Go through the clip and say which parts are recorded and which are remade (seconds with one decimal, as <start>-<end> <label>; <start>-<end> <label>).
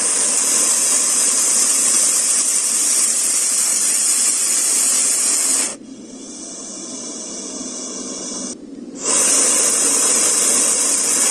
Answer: 0.0-3.7 recorded; 3.7-4.6 remade; 4.6-11.3 recorded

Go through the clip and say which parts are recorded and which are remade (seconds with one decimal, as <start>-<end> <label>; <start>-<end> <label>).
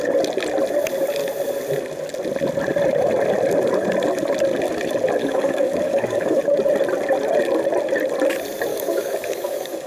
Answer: 0.0-5.2 recorded; 5.2-6.4 remade; 6.4-8.7 recorded; 8.7-9.9 remade